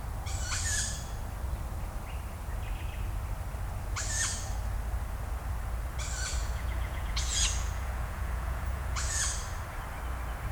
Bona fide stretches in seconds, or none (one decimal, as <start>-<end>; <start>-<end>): 0.0-6.4; 9.2-10.5